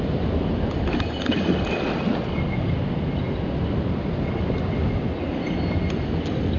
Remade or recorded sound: recorded